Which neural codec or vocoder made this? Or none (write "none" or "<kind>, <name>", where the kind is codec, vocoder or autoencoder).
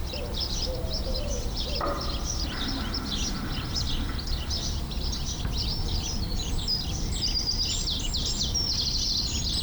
vocoder, BigVGAN v2